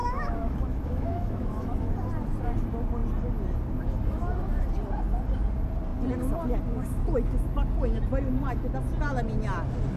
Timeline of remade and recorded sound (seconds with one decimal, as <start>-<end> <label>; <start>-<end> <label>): 0.0-1.9 remade; 1.9-10.0 recorded